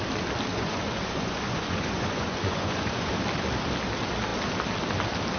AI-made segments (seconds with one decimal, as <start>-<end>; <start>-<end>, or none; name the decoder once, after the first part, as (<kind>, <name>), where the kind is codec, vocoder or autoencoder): 0.5-3.1 (vocoder, Vocos)